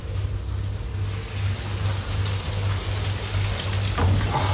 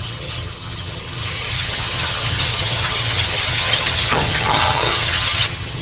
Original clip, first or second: first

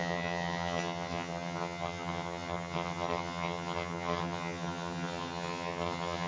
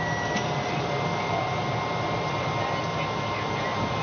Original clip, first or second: second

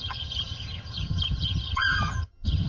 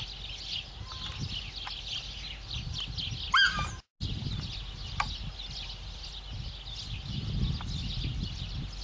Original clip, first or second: second